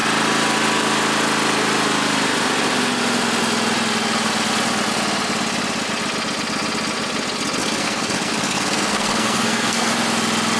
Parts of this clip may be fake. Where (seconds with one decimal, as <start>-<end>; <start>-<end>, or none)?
7.6-9.9

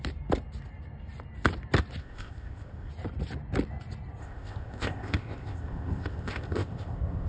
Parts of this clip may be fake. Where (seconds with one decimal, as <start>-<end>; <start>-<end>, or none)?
2.0-2.9; 4.2-7.3

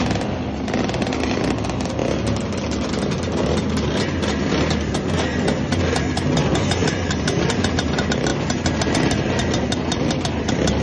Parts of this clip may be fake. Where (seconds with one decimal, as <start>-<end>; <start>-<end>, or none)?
6.8-7.4

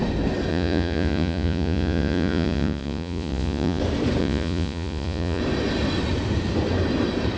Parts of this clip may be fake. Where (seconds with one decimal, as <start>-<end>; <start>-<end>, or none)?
0.5-3.8; 4.2-5.4

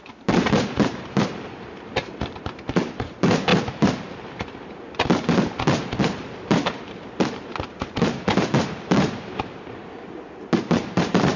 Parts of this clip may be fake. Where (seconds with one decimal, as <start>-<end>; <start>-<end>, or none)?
0.0-3.5; 6.0-9.8; 10.6-11.4